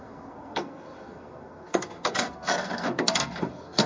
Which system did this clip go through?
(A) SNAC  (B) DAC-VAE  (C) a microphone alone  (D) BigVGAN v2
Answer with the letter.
A